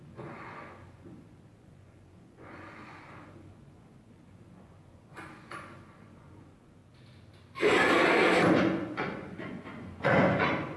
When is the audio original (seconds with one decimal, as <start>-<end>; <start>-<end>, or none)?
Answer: 6.8-8.6